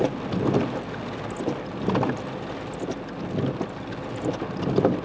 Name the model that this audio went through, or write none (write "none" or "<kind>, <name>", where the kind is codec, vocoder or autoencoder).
none